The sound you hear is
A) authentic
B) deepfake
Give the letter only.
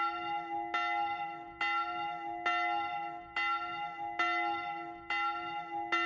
A